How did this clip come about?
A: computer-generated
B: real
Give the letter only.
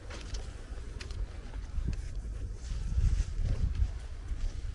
A